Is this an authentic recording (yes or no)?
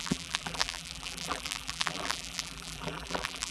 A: no